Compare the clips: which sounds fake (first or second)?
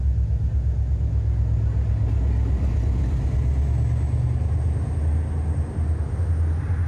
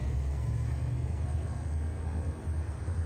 second